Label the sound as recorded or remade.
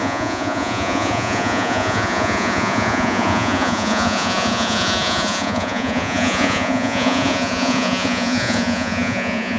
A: remade